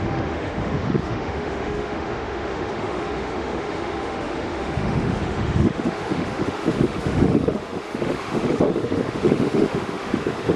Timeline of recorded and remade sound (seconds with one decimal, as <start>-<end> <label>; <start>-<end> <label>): 0.0-10.6 remade